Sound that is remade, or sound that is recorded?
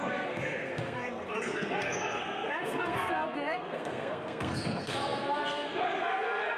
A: remade